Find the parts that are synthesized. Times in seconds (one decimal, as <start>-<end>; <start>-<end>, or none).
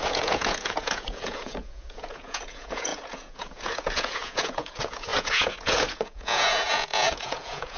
0.0-7.8